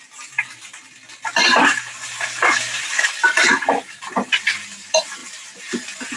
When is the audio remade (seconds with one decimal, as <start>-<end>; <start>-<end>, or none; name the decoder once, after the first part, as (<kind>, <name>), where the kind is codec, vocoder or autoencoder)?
1.3-3.5 (vocoder, BigVGAN v2); 5.2-6.2